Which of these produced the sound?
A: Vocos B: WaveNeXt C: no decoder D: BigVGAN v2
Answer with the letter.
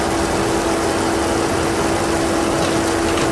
C